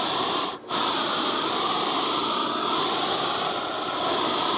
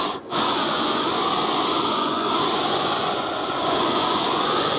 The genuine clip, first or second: first